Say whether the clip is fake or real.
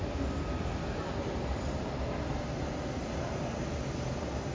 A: real